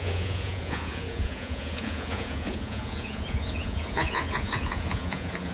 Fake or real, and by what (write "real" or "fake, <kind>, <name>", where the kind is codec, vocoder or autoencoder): fake, vocoder, Vocos